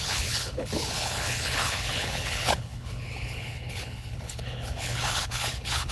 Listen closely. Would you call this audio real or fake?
fake